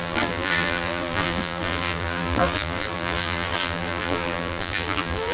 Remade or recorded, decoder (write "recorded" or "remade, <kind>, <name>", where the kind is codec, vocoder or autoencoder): remade, vocoder, BigVGAN v2